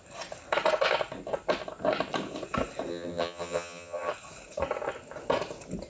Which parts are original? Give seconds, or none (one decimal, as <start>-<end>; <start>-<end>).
0.0-2.9; 4.1-5.9